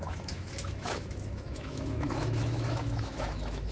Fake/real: fake